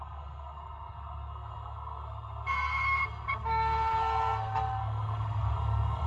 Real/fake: fake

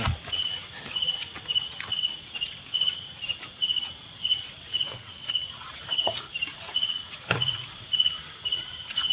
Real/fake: fake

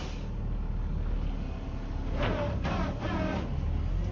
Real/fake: real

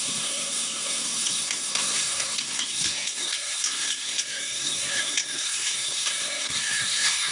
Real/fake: fake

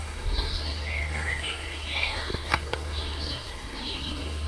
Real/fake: fake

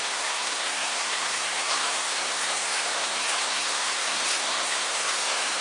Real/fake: fake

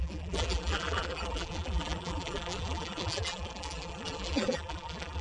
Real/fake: fake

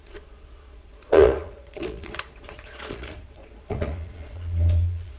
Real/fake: fake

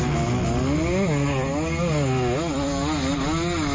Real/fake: real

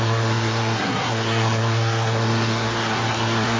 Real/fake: fake